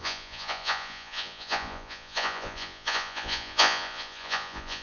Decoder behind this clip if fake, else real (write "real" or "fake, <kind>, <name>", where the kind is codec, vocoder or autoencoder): fake, vocoder, Vocos